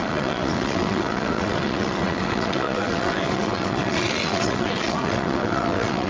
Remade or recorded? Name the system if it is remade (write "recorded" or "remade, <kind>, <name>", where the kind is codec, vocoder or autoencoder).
remade, vocoder, WaveNeXt